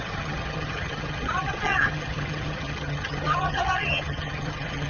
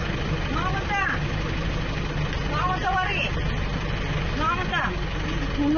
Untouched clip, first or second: second